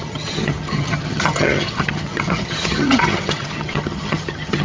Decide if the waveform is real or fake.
fake